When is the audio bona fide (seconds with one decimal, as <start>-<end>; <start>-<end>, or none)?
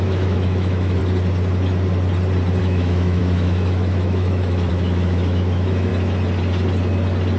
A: 1.0-2.6; 5.9-7.4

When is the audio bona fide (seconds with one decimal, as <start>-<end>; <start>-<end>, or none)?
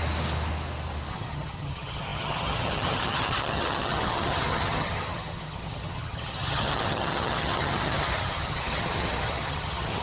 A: 0.0-1.1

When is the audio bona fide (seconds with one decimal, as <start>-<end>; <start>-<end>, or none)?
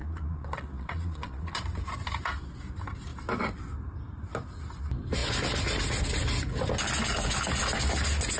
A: 1.6-8.4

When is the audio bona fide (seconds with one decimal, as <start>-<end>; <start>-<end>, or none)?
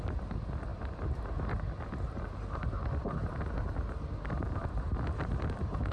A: 0.0-5.9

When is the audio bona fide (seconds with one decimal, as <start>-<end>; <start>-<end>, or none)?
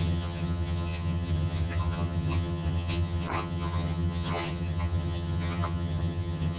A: none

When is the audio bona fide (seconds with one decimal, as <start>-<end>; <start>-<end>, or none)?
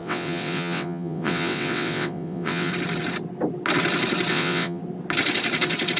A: 2.7-4.3; 4.8-6.0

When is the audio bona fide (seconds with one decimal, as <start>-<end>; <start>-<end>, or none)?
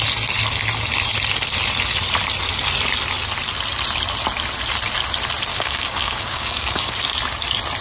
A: 0.0-5.5; 6.9-7.8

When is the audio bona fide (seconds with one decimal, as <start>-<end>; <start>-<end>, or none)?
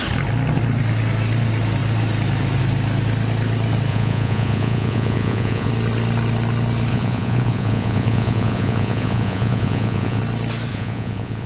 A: 0.0-3.9; 5.7-6.9; 10.2-10.7